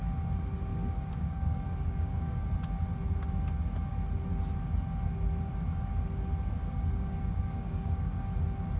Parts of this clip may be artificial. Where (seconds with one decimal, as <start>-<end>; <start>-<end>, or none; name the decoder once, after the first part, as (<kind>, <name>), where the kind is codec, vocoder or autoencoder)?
0.7-2.5 (codec, DAC); 6.6-8.2